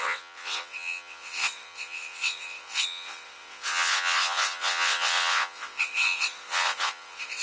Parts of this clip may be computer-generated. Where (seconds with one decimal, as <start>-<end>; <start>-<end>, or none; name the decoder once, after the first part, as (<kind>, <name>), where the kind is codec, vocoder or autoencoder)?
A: 0.0-7.4 (vocoder, WaveNeXt)